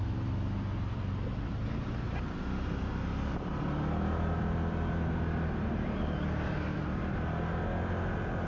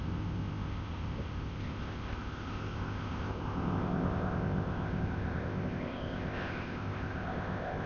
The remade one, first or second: second